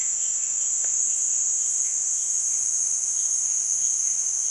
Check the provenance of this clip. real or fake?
fake